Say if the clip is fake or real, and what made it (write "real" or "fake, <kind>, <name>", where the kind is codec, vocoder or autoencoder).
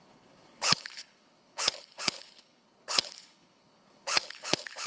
fake, codec, HILCodec